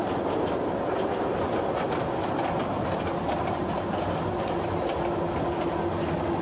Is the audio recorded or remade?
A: recorded